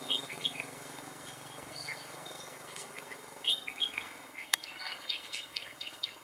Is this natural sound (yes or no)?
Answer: no